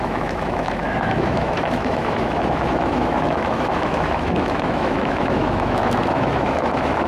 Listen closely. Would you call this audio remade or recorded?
remade